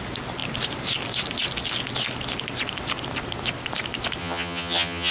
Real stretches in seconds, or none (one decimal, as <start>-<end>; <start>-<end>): 0.0-4.2